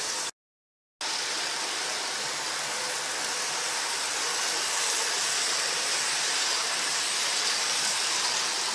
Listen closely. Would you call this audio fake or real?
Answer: real